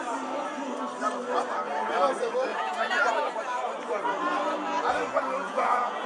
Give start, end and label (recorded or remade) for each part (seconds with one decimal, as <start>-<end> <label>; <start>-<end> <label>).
0.0-2.5 recorded; 2.5-3.3 remade; 3.3-5.4 recorded; 5.4-6.1 remade